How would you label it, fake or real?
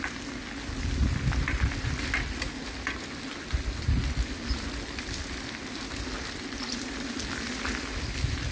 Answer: real